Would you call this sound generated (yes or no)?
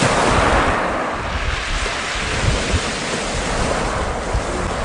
no